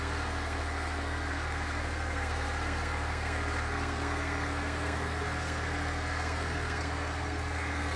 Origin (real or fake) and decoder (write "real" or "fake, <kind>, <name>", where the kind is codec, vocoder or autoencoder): fake, codec, SNAC